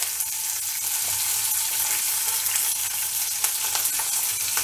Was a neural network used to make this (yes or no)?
no